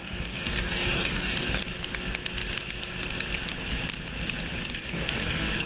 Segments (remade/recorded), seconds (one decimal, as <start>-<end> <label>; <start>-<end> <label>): 0.0-1.6 remade; 1.6-4.6 recorded; 4.6-5.7 remade